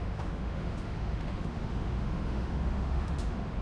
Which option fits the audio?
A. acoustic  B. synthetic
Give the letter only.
B